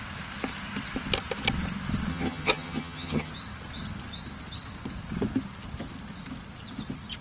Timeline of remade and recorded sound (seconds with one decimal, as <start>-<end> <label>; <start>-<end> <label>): 0.0-2.1 recorded; 2.1-3.3 remade; 3.3-7.2 recorded